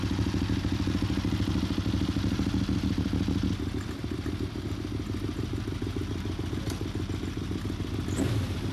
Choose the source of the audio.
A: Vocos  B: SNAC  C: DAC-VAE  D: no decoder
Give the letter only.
D